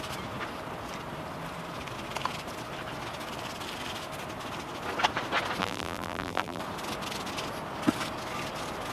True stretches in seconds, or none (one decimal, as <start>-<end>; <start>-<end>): 0.0-5.6; 6.6-8.9